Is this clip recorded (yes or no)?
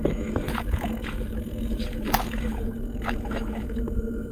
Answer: no